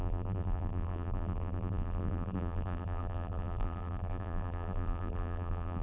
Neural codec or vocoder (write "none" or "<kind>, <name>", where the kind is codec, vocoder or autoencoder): vocoder, BigVGAN v2